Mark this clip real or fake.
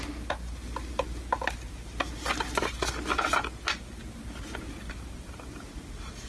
real